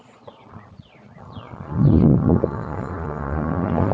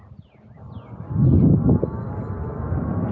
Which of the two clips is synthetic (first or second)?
first